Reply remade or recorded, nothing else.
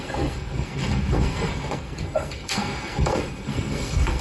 remade